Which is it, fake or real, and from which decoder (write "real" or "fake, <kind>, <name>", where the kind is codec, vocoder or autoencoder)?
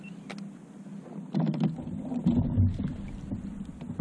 real